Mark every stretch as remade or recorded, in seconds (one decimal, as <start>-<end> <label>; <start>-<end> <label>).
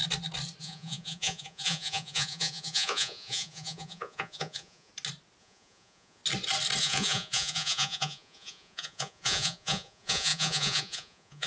0.0-0.6 recorded; 0.6-4.9 remade; 4.9-5.4 recorded; 5.4-6.2 remade; 6.2-6.8 recorded; 6.8-11.5 remade